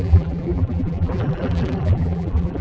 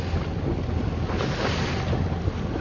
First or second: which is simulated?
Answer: first